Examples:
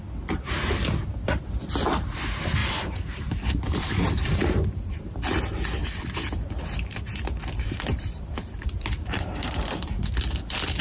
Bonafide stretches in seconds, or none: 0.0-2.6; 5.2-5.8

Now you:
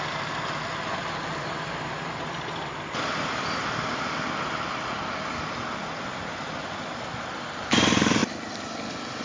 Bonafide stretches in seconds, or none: 0.0-9.2

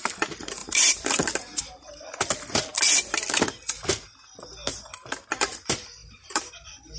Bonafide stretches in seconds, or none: 0.0-0.6; 1.6-6.0; 6.5-7.0

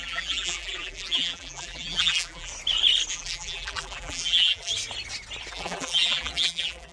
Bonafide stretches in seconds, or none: 2.5-3.1; 4.7-5.5

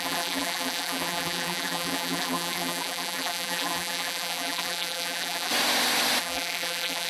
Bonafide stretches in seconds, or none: 5.5-6.2

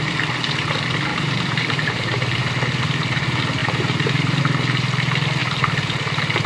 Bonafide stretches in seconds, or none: 0.0-1.1; 2.4-3.6; 4.4-6.5

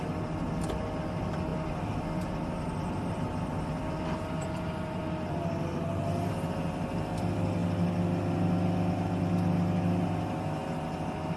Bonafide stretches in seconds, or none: 0.0-11.4

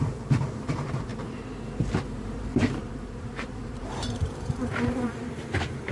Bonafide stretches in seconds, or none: 1.1-2.1